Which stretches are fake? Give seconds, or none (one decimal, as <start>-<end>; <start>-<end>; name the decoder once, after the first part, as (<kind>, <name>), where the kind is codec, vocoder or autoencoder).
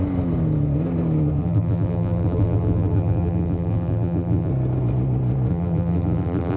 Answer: 1.4-4.5 (vocoder, BigVGAN v2); 5.5-6.6